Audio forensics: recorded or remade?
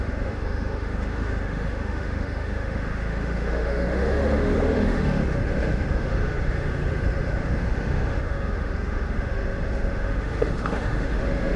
remade